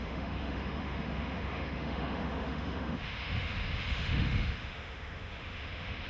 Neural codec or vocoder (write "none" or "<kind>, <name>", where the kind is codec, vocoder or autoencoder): autoencoder, DAC-VAE